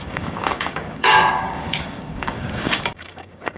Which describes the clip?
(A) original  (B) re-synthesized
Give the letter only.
B